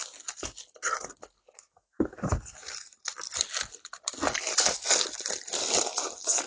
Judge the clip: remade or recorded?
recorded